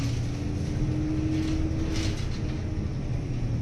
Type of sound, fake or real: real